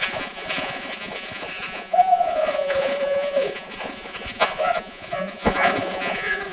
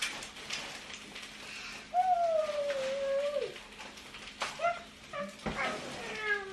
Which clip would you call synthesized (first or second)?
first